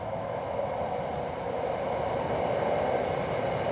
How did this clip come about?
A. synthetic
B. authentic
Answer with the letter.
B